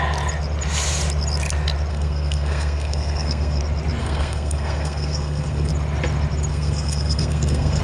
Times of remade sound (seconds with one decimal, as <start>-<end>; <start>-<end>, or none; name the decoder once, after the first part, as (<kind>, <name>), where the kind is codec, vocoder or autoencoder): 1.9-3.6 (codec, SNAC); 4.0-5.7; 6.5-7.8